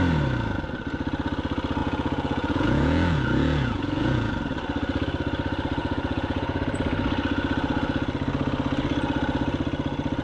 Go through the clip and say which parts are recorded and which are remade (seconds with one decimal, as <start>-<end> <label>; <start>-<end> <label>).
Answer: 0.0-1.8 recorded; 1.8-4.3 remade; 4.3-5.8 recorded; 5.8-6.6 remade; 6.6-10.2 recorded